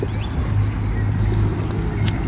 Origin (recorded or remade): recorded